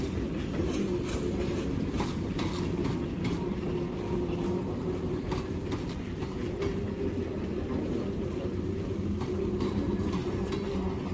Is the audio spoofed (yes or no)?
no